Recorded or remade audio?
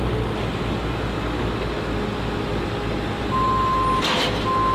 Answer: recorded